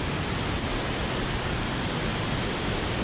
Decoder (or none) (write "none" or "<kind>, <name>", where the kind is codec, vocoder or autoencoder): none